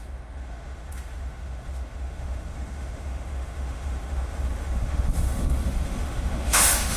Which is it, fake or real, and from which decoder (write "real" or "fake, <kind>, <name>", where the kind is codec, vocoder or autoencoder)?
fake, autoencoder, DAC-VAE